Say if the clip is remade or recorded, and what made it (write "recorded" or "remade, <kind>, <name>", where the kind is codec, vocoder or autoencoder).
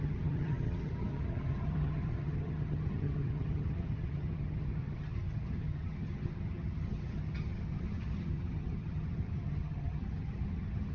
remade, vocoder, HiFi-GAN